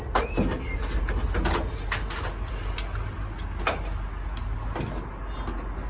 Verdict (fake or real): real